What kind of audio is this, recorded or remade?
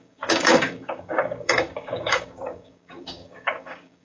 remade